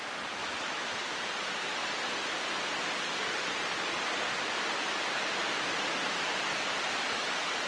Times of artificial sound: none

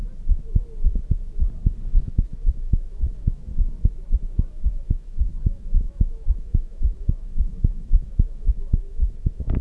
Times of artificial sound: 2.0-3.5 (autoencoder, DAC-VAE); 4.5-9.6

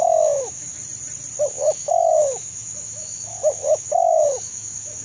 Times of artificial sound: 0.0-0.8 (autoencoder, DAC-VAE); 1.5-5.0

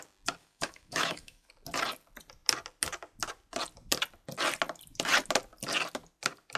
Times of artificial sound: 0.4-1.5 (autoencoder, DAC-VAE)

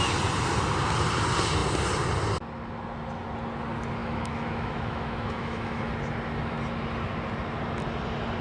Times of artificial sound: 4.0-5.9 (autoencoder, DAC-VAE)

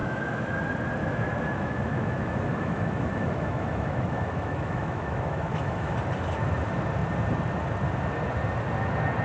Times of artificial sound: 0.0-0.6 (autoencoder, DAC-VAE); 1.0-5.9